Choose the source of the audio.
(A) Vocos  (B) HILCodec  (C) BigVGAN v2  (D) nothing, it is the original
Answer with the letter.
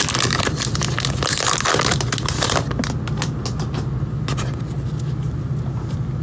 D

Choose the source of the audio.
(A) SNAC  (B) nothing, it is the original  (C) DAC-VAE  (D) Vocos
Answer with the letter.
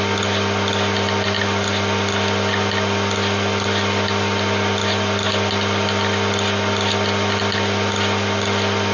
B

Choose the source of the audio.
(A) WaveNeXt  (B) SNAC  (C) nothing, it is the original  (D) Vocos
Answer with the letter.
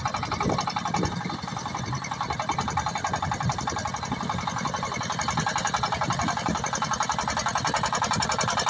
C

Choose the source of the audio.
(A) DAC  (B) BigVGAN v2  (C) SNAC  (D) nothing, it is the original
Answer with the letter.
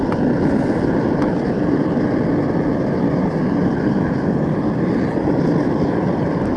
D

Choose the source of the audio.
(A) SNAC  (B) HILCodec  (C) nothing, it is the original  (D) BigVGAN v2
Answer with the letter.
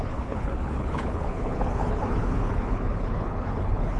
B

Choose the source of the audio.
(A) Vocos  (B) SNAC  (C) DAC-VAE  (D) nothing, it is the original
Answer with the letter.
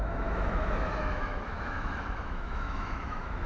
C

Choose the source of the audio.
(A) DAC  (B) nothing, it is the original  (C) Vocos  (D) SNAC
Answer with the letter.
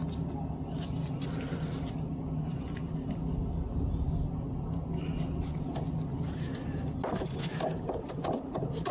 B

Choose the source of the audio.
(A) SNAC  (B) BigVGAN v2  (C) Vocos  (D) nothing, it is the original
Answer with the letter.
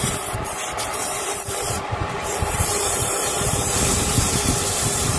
B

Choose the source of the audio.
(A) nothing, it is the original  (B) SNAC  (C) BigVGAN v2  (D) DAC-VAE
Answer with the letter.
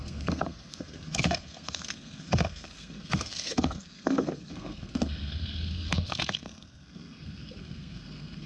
B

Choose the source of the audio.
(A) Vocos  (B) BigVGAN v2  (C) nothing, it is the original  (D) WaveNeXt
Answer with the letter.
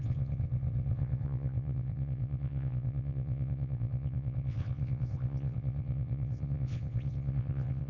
D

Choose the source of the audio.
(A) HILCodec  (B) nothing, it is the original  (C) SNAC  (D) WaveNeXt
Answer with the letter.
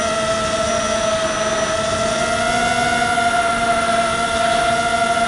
B